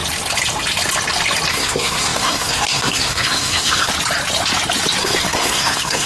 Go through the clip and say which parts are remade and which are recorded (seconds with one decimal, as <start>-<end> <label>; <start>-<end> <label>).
0.0-1.5 recorded; 1.5-3.9 remade; 3.9-5.0 recorded; 5.0-6.1 remade